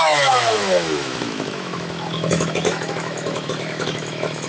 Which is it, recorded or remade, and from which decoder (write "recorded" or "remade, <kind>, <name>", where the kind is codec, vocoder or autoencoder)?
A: remade, autoencoder, DAC-VAE